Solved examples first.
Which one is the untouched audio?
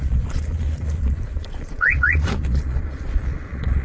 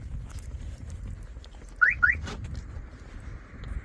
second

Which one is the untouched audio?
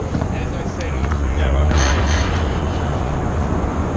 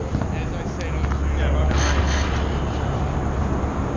second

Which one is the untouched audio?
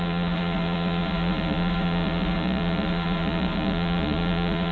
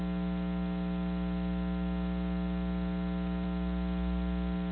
second